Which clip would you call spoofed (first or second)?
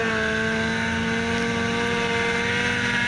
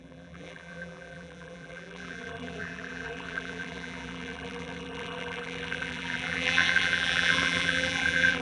second